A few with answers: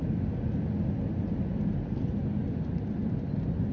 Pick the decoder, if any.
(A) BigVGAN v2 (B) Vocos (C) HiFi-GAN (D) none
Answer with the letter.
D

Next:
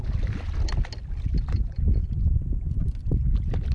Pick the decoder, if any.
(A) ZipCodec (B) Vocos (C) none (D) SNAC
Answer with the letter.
C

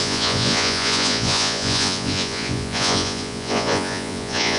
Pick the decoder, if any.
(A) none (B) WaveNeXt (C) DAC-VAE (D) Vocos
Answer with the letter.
D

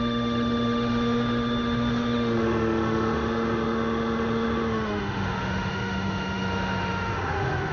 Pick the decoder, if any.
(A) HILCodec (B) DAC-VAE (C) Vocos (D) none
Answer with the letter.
B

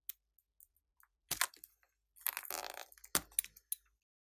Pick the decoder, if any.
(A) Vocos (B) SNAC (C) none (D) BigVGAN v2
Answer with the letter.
C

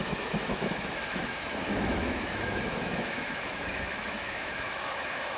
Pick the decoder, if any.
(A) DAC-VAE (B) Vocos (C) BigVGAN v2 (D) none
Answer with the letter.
A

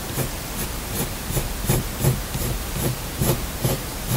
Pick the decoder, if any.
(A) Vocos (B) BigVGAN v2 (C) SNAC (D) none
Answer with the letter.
B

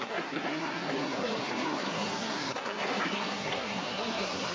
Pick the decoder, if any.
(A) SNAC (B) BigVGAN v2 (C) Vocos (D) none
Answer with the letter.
A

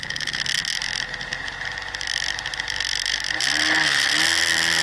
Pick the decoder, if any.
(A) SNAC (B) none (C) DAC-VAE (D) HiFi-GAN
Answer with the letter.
B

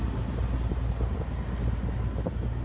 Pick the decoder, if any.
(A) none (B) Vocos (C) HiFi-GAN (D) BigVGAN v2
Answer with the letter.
A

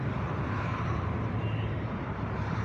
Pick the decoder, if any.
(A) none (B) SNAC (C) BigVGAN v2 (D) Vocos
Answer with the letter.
C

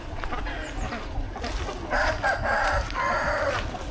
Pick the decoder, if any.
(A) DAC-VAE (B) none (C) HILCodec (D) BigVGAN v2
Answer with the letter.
D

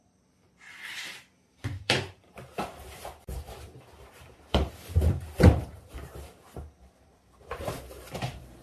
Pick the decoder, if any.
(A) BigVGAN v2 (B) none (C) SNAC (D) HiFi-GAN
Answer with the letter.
A